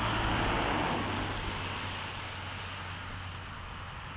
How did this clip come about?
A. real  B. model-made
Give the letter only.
A